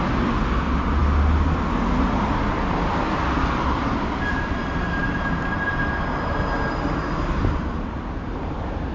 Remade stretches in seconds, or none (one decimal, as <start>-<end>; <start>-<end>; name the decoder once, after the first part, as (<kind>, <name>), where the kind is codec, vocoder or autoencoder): none